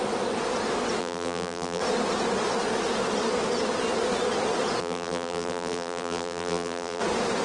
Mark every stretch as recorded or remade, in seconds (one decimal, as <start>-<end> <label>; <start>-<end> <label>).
0.0-1.0 recorded; 1.0-1.8 remade; 1.8-4.8 recorded; 4.8-7.0 remade; 7.0-7.4 recorded